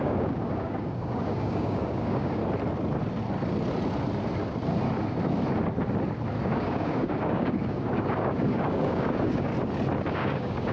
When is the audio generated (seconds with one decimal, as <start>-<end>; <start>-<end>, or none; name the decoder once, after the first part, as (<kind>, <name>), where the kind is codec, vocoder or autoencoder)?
0.0-2.4 (codec, DAC); 6.4-9.5; 10.1-10.7